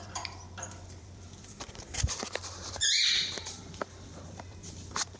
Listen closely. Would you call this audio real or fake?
fake